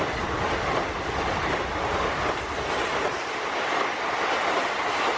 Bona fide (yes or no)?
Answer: yes